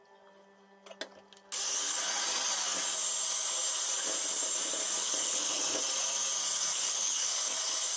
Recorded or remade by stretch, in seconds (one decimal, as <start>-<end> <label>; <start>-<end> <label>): 0.0-5.0 recorded; 5.0-5.6 remade; 5.6-6.7 recorded; 6.7-7.5 remade; 7.5-8.0 recorded